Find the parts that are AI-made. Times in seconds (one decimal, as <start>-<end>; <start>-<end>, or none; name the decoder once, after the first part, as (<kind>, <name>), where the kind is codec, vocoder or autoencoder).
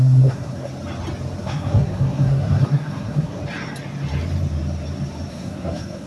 0.0-0.7 (codec, SNAC); 1.4-3.4; 5.3-6.1